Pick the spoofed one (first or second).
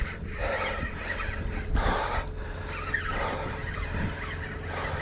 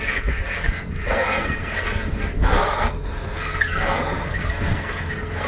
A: second